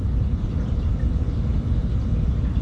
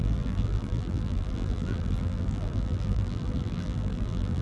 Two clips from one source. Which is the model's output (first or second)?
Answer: second